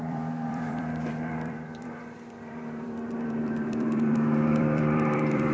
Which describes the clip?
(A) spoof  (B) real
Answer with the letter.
A